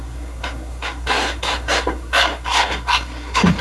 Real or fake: fake